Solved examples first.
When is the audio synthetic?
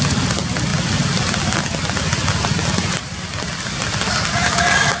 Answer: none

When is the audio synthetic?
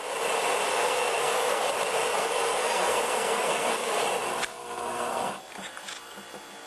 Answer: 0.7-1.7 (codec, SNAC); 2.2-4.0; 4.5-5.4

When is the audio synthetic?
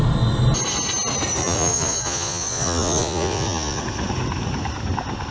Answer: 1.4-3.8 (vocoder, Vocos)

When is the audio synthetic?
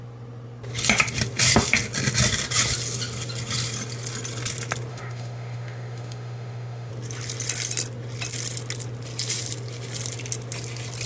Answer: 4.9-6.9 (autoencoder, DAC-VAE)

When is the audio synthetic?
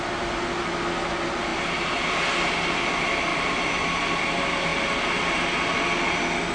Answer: none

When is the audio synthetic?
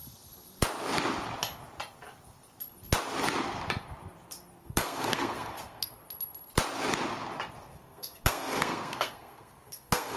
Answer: 4.6-6.0 (codec, SNAC); 7.6-10.2